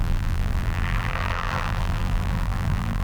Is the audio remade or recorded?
remade